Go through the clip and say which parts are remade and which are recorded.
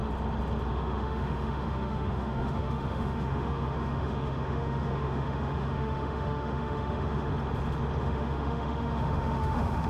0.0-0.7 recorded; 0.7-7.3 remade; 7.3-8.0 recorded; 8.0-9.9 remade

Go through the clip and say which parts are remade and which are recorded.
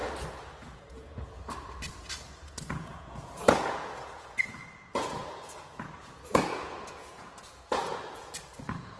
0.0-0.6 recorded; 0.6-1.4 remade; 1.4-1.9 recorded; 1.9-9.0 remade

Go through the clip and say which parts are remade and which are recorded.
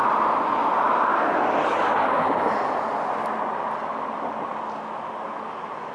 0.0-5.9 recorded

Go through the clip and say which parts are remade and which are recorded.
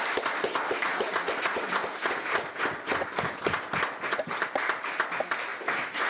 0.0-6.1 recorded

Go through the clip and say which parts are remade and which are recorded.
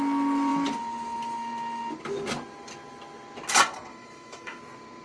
0.0-3.9 recorded; 3.9-4.6 remade; 4.6-5.0 recorded